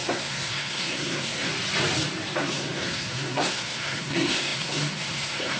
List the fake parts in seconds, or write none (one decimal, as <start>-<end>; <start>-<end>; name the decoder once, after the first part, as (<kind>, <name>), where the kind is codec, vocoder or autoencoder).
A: 0.0-1.5 (codec, SNAC); 2.4-5.6

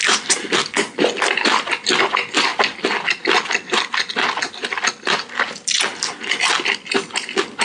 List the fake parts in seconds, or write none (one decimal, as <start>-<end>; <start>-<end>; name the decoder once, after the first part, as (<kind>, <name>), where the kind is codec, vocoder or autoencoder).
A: none

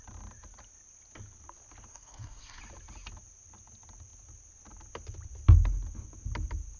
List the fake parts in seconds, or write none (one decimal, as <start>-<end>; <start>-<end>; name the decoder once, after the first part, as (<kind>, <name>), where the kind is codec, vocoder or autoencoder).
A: 1.9-2.6 (codec, SNAC)

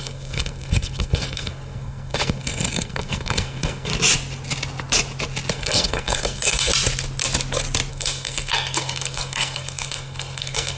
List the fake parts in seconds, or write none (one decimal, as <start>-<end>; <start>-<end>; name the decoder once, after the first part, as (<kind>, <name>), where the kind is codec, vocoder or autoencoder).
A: 0.0-3.9 (codec, SNAC); 5.5-6.7; 7.9-10.8

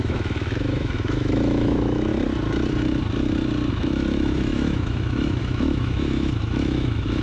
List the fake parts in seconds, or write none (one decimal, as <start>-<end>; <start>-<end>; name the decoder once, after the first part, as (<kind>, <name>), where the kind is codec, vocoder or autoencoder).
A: 0.0-2.1 (autoencoder, DAC-VAE); 3.7-7.2

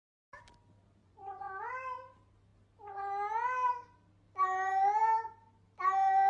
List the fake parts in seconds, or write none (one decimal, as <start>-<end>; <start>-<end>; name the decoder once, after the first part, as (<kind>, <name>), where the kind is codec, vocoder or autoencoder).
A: 1.0-1.6 (vocoder, Vocos)

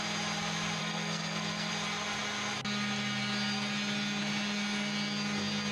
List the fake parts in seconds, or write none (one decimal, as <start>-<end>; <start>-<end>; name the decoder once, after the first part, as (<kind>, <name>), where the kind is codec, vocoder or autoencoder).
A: 0.8-1.7 (codec, SNAC)